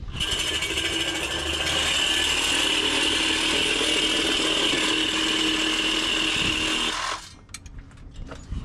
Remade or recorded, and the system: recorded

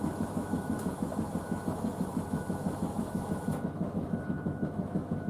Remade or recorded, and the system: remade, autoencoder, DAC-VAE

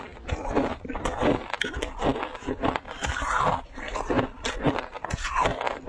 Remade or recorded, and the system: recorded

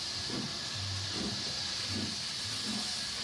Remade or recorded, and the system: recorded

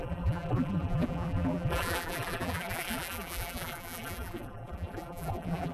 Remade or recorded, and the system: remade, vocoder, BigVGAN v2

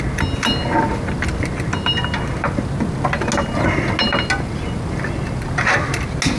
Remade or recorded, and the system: recorded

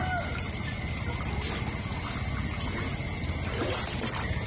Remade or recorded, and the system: recorded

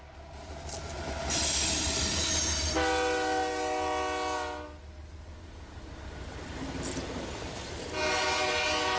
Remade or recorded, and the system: recorded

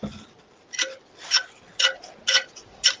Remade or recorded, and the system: recorded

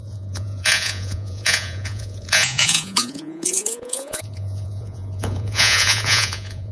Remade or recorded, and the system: remade, vocoder, Vocos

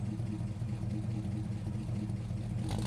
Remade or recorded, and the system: recorded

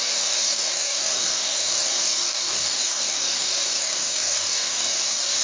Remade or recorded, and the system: remade, codec, DAC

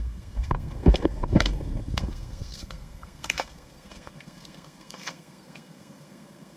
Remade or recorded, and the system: remade, codec, SNAC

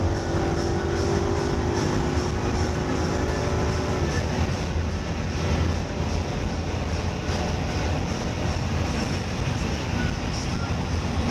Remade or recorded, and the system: recorded